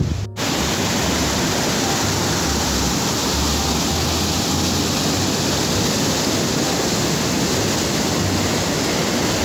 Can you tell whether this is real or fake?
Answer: real